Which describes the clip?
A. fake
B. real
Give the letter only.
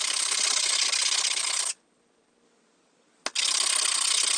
B